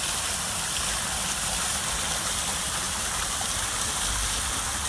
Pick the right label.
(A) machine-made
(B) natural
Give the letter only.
B